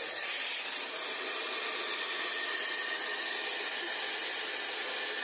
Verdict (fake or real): real